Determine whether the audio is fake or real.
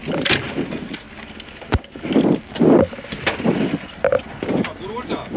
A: real